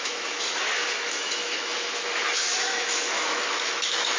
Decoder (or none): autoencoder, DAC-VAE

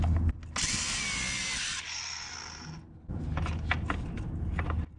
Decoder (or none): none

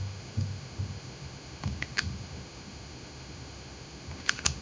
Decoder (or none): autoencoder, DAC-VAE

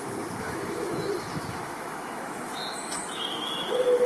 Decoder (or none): autoencoder, DAC-VAE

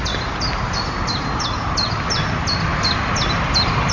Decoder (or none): none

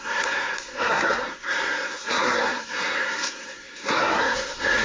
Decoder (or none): codec, SNAC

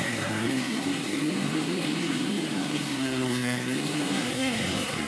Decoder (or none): codec, SNAC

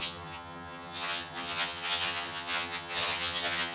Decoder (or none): vocoder, HiFi-GAN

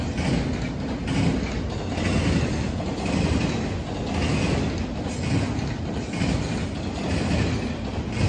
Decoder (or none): none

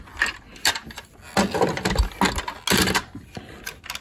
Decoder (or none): none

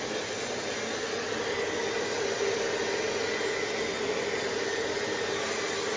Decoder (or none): none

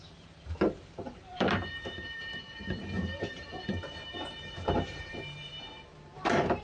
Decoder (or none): vocoder, BigVGAN v2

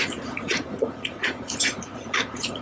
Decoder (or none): vocoder, Vocos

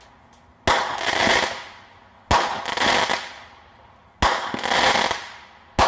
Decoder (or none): none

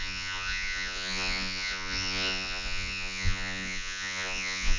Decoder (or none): vocoder, Vocos